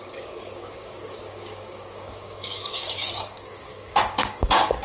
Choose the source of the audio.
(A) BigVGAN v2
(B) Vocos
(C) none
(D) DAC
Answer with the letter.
D